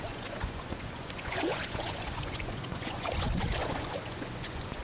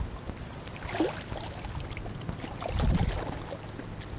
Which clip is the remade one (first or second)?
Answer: first